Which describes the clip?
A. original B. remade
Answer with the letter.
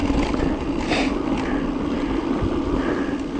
A